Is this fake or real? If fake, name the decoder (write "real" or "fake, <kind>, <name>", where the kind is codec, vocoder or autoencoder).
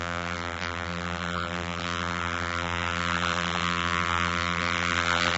fake, vocoder, BigVGAN v2